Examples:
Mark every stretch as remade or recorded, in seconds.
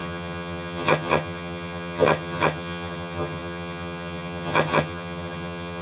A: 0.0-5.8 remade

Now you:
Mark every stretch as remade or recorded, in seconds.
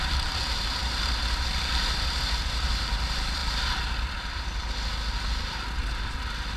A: 0.0-3.4 remade; 3.4-6.6 recorded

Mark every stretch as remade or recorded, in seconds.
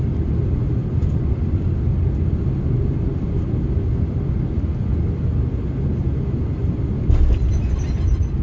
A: 0.0-0.8 recorded; 0.8-1.7 remade; 1.7-8.4 recorded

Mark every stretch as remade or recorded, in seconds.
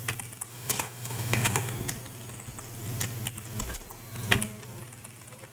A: 0.0-0.5 recorded; 0.5-1.7 remade; 1.7-5.5 recorded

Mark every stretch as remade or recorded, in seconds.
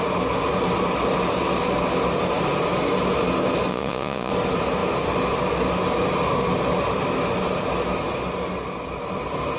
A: 0.0-3.7 recorded; 3.7-4.3 remade; 4.3-9.6 recorded